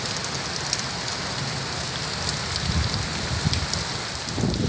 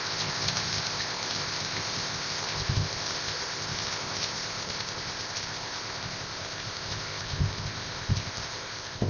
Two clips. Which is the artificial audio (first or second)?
second